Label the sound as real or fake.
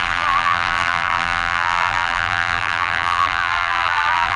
fake